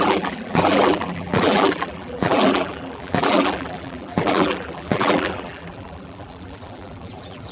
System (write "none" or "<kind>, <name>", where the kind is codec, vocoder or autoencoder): vocoder, BigVGAN v2